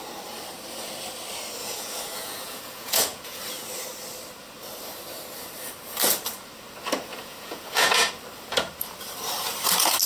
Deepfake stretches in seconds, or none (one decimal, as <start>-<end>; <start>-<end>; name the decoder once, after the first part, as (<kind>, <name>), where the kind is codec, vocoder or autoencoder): 1.6-3.4 (vocoder, Vocos); 7.1-8.1